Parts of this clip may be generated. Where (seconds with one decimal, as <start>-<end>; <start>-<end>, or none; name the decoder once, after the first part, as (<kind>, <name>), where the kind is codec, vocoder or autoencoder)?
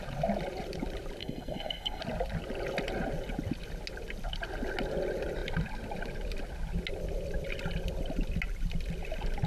1.2-2.0 (codec, SNAC)